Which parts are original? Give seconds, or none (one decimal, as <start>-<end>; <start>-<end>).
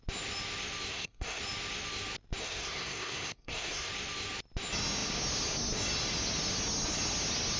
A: 0.0-0.9; 1.4-2.4; 3.9-7.6